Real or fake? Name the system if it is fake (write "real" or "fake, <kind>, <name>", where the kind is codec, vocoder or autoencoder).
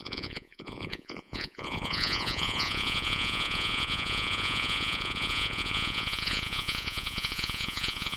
fake, vocoder, Vocos